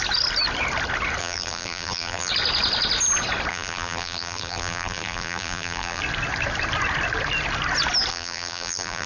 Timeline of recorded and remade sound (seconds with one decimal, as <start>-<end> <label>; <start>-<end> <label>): 0.0-1.2 recorded; 1.2-2.3 remade; 2.3-3.5 recorded; 3.5-6.0 remade; 6.0-8.1 recorded; 8.1-9.1 remade